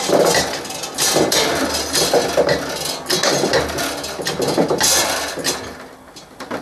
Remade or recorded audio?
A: recorded